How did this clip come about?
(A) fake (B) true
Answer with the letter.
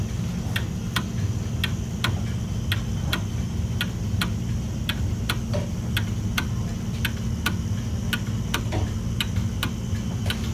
B